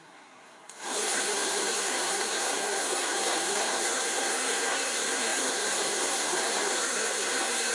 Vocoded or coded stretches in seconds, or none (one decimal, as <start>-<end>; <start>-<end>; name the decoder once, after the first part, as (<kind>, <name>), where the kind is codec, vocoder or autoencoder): 0.0-7.7 (codec, SNAC)